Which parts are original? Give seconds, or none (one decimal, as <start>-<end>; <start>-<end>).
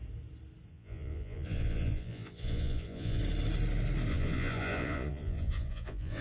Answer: 0.0-0.7; 3.2-4.1